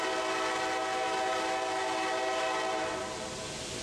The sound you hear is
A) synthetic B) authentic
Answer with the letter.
B